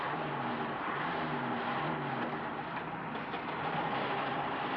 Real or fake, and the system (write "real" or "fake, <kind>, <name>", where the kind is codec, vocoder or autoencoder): real